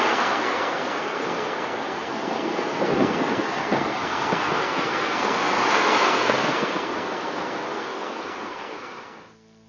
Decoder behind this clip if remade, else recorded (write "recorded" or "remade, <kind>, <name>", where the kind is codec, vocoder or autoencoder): remade, codec, SNAC